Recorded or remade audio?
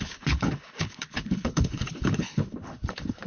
remade